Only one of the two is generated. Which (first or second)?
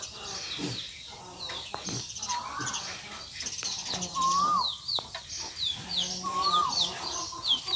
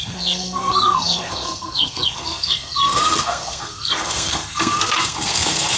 second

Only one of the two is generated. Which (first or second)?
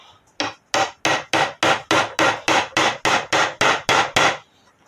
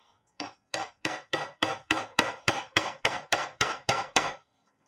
second